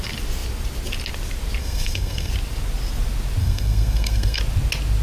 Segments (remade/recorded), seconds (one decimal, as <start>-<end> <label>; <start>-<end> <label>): 0.0-1.6 recorded; 1.6-2.3 remade; 2.3-3.4 recorded; 3.4-4.4 remade; 4.4-5.0 recorded